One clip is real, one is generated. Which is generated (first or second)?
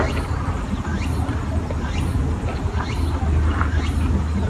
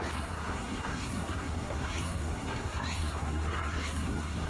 second